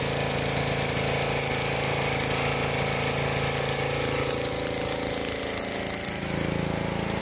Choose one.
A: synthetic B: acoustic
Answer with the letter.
B